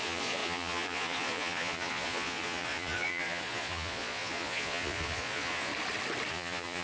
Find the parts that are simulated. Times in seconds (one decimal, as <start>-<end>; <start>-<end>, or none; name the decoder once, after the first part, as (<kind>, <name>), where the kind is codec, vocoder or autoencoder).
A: 0.0-5.7 (vocoder, Vocos); 6.3-6.8